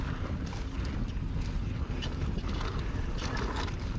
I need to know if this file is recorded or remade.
recorded